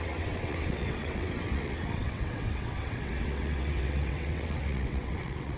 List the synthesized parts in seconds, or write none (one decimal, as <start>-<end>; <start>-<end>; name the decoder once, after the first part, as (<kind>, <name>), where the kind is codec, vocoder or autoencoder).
0.0-5.6 (vocoder, WaveNeXt)

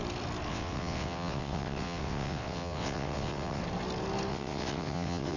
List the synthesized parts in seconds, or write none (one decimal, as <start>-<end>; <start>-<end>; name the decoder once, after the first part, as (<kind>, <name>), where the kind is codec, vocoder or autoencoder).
0.5-3.6 (vocoder, WaveNeXt); 4.3-5.4

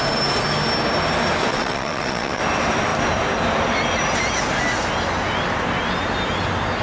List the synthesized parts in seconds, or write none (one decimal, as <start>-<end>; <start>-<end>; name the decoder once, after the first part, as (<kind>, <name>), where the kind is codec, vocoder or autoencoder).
1.5-2.4 (vocoder, WaveNeXt)

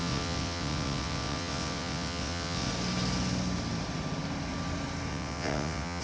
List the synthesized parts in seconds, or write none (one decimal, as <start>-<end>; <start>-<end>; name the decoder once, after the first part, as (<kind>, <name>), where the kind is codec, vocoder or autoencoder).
0.0-2.7 (vocoder, WaveNeXt); 5.1-6.0

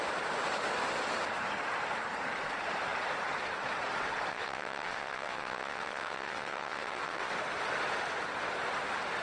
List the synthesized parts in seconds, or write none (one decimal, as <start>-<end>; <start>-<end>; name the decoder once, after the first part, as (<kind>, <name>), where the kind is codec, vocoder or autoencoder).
4.3-7.3 (vocoder, WaveNeXt)

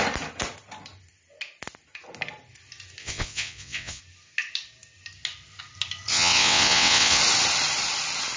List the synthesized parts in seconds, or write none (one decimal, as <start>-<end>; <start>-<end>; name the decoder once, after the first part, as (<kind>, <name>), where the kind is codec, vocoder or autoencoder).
3.0-4.0 (vocoder, WaveNeXt); 6.1-7.2